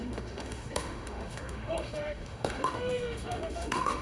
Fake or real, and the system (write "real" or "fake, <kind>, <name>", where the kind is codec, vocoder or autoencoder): fake, autoencoder, DAC-VAE